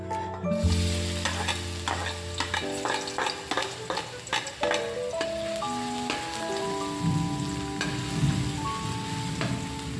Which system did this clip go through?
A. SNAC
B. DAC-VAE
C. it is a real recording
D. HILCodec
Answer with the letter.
C